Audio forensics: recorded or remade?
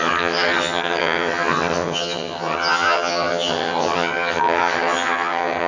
remade